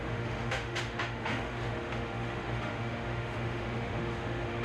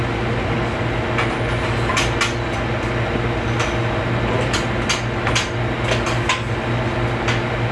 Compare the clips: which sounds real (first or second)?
second